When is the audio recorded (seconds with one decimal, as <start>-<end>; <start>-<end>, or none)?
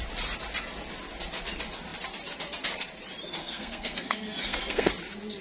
0.0-3.4; 4.9-5.4